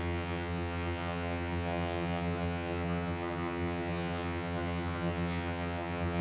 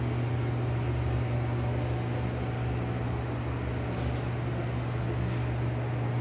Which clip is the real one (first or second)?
second